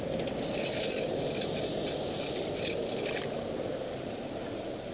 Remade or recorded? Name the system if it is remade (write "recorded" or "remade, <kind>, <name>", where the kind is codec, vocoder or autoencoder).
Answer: recorded